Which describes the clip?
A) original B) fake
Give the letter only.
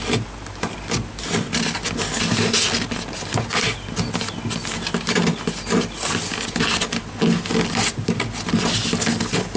A